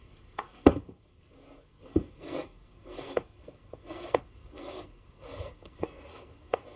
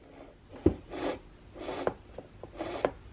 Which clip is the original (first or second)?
second